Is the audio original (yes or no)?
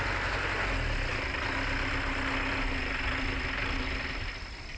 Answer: yes